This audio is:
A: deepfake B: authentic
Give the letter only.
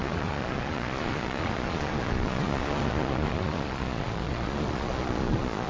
A